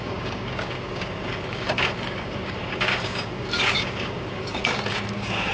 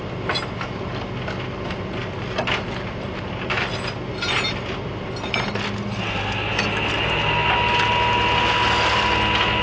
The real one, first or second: second